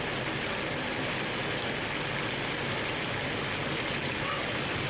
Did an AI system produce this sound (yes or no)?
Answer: no